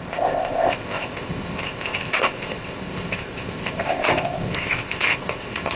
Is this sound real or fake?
fake